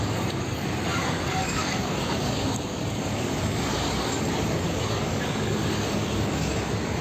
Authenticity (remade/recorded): remade